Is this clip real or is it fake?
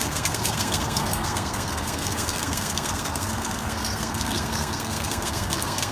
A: fake